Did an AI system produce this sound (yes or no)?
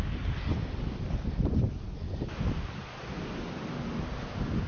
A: no